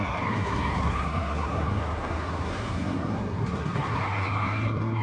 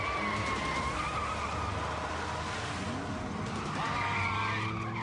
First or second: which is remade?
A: first